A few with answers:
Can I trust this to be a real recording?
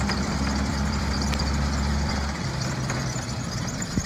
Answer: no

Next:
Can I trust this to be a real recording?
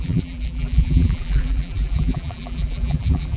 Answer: no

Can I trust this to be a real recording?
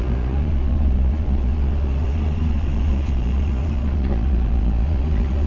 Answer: no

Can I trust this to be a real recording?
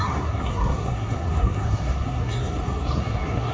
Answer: no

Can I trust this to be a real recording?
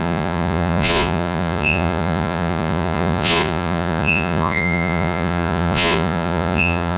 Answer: no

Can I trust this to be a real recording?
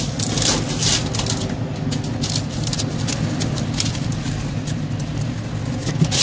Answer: yes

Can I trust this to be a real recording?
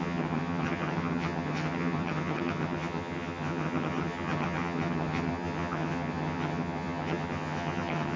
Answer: no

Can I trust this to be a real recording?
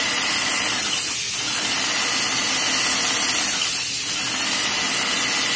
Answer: yes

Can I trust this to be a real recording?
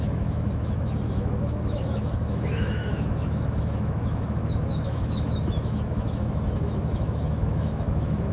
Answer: no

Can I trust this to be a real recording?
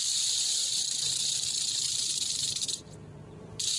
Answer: no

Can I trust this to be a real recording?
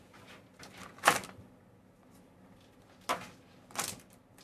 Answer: yes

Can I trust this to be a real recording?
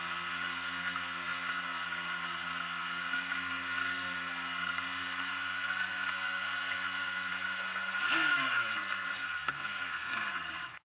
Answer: no